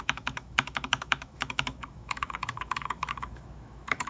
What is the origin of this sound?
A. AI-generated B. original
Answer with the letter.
A